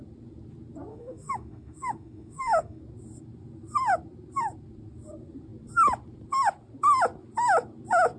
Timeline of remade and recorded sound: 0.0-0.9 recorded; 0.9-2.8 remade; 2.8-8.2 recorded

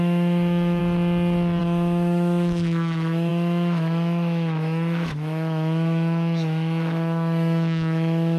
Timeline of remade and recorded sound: 0.0-0.8 remade; 0.8-1.6 recorded; 1.6-8.4 remade

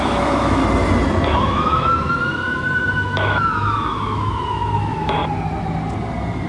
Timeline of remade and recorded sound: 0.0-0.6 remade; 0.6-1.3 recorded; 1.3-5.2 remade; 5.2-6.5 recorded

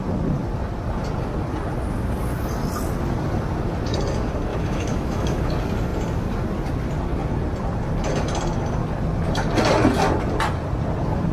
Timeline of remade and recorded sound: 0.0-4.5 recorded; 4.5-5.4 remade; 5.4-11.3 recorded

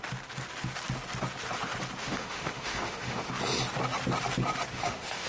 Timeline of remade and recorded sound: 0.0-2.0 recorded; 2.0-3.3 remade; 3.3-4.7 recorded; 4.7-5.3 remade

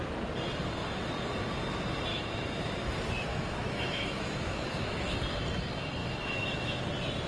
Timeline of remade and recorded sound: 0.0-2.1 recorded; 2.1-2.9 remade; 2.9-3.3 recorded; 3.3-5.2 remade; 5.2-6.0 recorded; 6.0-6.8 remade; 6.8-7.3 recorded

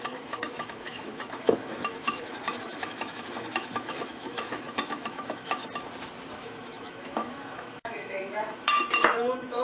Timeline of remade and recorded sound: 0.0-5.6 remade; 5.6-6.4 recorded; 6.4-9.6 remade